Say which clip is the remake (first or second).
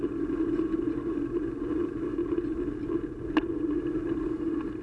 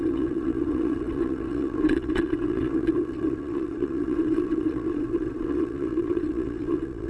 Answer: second